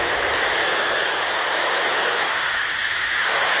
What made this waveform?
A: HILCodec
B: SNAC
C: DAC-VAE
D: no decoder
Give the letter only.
C